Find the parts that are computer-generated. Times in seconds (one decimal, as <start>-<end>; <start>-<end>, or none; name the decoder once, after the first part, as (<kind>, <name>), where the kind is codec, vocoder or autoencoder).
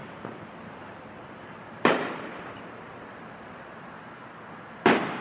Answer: 0.8-3.9 (vocoder, BigVGAN v2)